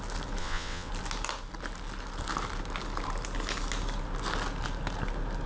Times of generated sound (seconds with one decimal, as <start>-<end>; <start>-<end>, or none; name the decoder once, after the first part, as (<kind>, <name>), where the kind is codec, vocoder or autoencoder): 0.4-0.9 (vocoder, WaveNeXt)